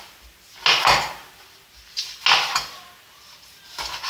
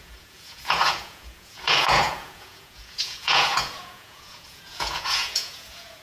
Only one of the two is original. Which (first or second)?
first